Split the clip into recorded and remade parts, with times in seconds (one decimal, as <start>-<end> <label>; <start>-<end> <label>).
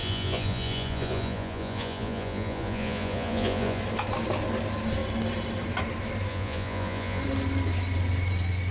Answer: 0.0-3.8 remade; 3.8-6.3 recorded; 6.3-7.2 remade; 7.2-8.7 recorded